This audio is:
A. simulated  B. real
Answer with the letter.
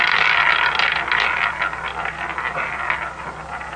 B